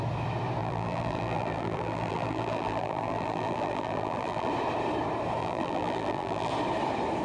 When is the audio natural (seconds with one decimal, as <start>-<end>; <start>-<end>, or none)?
0.0-0.6; 4.5-5.4; 6.5-7.2